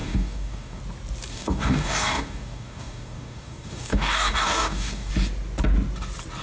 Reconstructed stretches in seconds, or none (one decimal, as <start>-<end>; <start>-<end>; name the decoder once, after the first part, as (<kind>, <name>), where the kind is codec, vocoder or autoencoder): 0.0-0.8 (codec, DAC); 1.3-5.1